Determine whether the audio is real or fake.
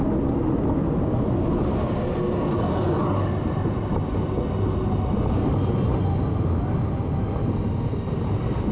real